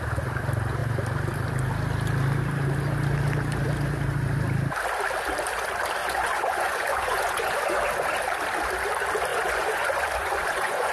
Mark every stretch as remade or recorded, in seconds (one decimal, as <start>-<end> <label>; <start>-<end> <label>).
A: 0.0-6.0 recorded; 6.0-7.8 remade; 7.8-9.3 recorded; 9.3-10.9 remade

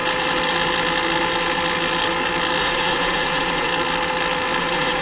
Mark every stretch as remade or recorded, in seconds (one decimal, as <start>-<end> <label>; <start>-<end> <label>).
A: 0.0-2.6 recorded; 2.6-3.7 remade; 3.7-4.6 recorded; 4.6-5.0 remade

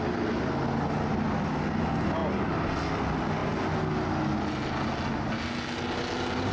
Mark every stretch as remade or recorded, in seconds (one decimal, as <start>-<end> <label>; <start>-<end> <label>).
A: 0.0-6.5 recorded

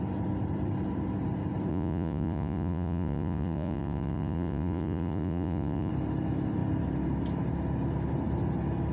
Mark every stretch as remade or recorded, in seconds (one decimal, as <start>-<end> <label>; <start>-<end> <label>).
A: 0.0-1.7 recorded; 1.7-5.9 remade; 5.9-8.9 recorded

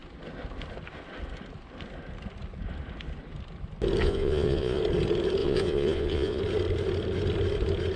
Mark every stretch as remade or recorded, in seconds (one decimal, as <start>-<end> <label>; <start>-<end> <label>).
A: 0.0-4.0 recorded; 4.0-4.8 remade; 4.8-5.4 recorded; 5.4-6.4 remade; 6.4-8.0 recorded

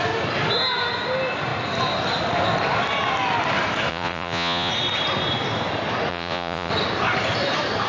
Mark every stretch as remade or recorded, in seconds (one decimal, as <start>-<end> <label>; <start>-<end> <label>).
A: 0.0-3.9 recorded; 3.9-4.7 remade; 4.7-6.1 recorded; 6.1-6.7 remade; 6.7-7.9 recorded

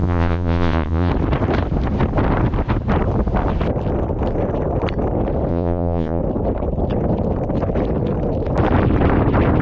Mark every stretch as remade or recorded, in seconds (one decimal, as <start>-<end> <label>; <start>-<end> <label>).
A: 0.0-1.1 remade; 1.1-5.5 recorded; 5.5-6.2 remade; 6.2-9.6 recorded

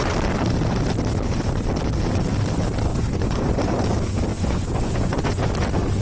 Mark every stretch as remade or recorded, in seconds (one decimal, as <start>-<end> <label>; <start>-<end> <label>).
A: 0.0-2.9 recorded; 2.9-3.6 remade; 3.6-4.3 recorded; 4.3-5.5 remade; 5.5-6.0 recorded